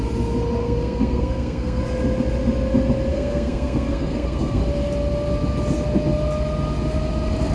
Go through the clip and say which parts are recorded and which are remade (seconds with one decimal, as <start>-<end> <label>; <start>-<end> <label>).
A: 0.0-0.6 recorded; 0.6-1.8 remade; 1.8-3.1 recorded; 3.1-4.6 remade; 4.6-7.5 recorded

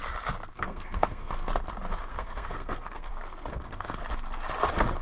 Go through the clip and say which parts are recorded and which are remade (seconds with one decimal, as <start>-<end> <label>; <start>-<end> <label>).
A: 0.0-0.5 recorded; 0.5-1.5 remade; 1.5-2.1 recorded; 2.1-3.1 remade; 3.1-3.5 recorded; 3.5-4.0 remade; 4.0-5.0 recorded

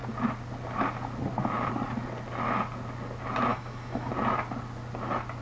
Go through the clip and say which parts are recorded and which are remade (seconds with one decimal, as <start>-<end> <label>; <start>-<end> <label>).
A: 0.0-3.5 recorded; 3.5-4.1 remade; 4.1-5.4 recorded

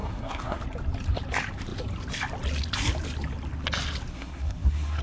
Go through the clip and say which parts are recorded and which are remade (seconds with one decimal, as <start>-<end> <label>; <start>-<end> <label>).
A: 0.0-0.6 remade; 0.6-4.1 recorded; 4.1-5.0 remade